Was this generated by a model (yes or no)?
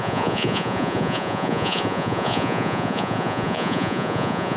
yes